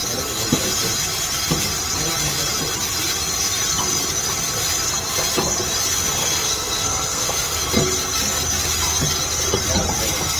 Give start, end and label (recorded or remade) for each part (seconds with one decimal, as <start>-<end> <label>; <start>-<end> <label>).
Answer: 0.0-6.2 recorded; 6.2-7.6 remade; 7.6-10.4 recorded